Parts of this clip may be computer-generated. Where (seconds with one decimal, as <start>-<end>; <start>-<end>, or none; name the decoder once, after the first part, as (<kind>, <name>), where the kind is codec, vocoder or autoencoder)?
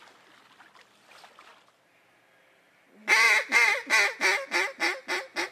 none